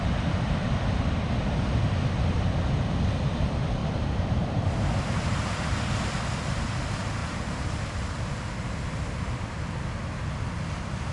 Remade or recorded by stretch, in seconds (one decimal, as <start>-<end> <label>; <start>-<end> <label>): 0.0-3.8 recorded; 3.8-4.7 remade; 4.7-7.2 recorded; 7.2-7.8 remade; 7.8-11.1 recorded